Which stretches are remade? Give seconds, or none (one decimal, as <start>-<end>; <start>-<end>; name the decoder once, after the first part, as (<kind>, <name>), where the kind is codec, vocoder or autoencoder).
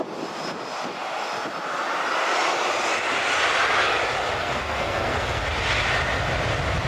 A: 4.4-5.4 (codec, SNAC)